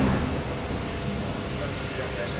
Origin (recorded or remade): recorded